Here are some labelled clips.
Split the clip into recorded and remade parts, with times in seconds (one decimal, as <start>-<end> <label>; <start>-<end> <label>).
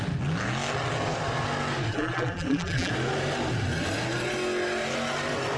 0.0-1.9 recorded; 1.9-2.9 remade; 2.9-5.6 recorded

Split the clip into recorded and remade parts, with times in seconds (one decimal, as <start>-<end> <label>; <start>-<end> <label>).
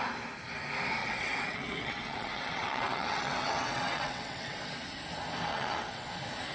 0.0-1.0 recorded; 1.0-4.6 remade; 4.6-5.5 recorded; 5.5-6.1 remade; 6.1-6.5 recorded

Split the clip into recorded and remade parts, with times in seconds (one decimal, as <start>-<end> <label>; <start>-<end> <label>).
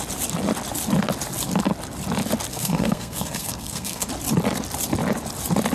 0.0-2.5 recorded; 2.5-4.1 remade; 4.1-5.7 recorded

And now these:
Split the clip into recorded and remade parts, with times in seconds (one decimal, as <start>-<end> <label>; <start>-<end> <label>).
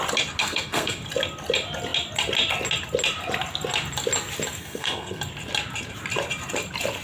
0.0-0.4 recorded; 0.4-1.0 remade; 1.0-4.6 recorded; 4.6-5.2 remade; 5.2-7.0 recorded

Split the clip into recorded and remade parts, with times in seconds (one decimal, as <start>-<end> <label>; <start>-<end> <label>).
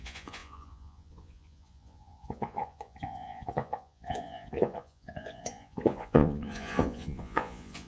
0.0-7.9 remade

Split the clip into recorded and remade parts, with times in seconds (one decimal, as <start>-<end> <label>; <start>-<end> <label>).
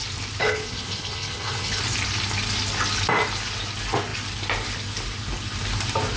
0.0-0.4 recorded; 0.4-1.8 remade; 1.8-6.2 recorded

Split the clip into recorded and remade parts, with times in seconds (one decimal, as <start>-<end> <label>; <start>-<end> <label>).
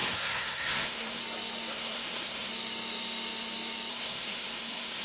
0.0-1.2 remade; 1.2-1.7 recorded; 1.7-2.5 remade; 2.5-3.9 recorded; 3.9-5.0 remade